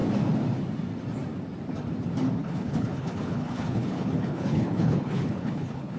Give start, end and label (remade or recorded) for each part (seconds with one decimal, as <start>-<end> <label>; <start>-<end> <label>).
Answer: 0.0-2.4 recorded; 2.4-6.0 remade

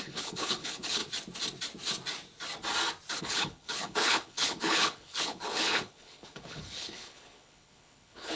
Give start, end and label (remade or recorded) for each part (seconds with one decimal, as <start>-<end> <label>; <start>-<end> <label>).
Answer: 0.0-1.0 remade; 1.0-3.2 recorded; 3.2-8.4 remade

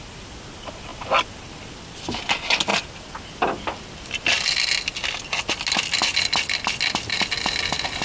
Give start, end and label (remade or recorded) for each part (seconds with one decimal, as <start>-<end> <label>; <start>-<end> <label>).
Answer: 0.0-8.0 recorded

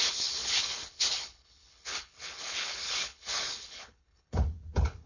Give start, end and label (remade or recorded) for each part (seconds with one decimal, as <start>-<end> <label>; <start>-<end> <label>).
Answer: 0.0-5.1 remade